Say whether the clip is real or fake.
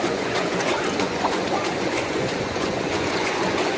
fake